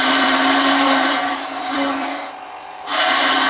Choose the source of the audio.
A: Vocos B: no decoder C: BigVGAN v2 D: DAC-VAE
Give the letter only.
C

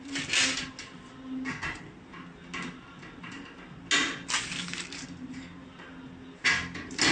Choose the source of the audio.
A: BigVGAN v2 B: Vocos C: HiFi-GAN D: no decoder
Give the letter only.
D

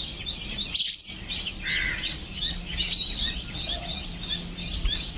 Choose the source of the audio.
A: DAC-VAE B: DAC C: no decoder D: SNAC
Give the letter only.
C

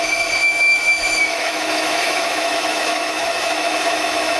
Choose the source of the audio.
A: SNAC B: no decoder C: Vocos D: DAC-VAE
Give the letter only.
D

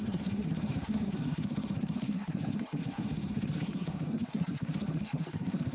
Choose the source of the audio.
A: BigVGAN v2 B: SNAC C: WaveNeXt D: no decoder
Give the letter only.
B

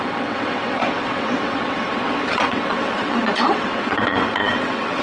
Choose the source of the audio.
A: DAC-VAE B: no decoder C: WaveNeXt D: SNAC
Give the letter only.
C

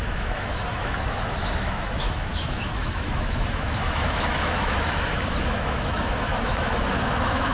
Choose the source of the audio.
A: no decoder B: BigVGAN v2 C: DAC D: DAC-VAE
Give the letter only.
D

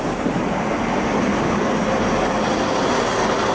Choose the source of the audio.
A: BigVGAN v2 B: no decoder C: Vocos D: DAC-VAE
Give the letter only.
B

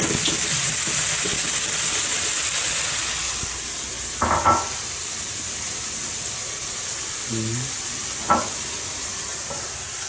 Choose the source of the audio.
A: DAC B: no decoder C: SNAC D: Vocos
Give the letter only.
B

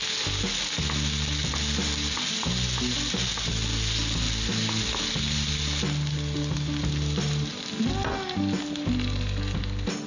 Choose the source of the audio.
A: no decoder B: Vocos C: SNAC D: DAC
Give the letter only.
A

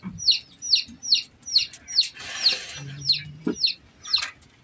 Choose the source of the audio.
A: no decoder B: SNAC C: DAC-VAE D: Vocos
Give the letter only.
A